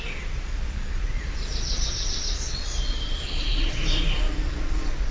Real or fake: fake